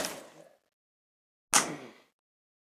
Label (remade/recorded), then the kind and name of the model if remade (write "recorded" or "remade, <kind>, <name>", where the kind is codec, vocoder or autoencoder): recorded